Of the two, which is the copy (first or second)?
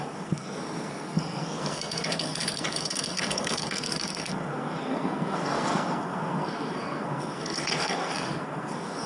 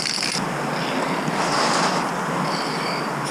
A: first